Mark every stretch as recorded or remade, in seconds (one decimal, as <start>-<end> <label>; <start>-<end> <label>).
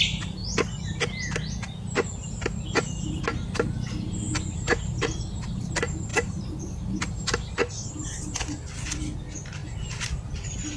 0.0-10.8 recorded